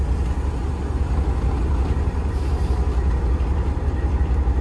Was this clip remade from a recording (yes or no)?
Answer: no